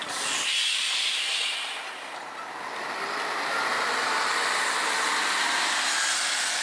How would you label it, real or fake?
real